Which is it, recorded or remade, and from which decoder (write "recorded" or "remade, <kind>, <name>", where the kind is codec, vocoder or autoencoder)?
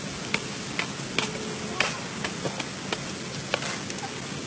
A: recorded